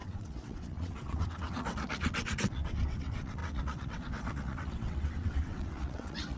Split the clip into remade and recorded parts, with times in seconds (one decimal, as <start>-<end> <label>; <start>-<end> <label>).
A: 0.0-6.4 remade